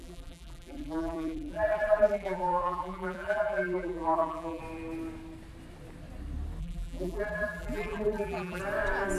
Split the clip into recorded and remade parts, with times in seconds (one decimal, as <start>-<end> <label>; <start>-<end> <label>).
0.0-4.6 remade; 4.6-6.6 recorded; 6.6-8.6 remade; 8.6-9.2 recorded